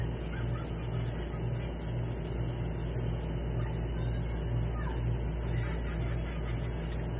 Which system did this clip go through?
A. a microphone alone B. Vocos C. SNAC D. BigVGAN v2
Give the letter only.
A